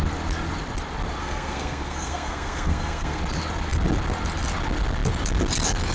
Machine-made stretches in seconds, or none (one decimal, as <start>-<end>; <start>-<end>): 1.2-3.2